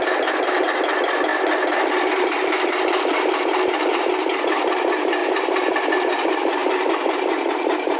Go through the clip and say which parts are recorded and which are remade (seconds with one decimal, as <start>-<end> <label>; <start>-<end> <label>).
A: 0.0-1.3 recorded; 1.3-4.4 remade; 4.4-8.0 recorded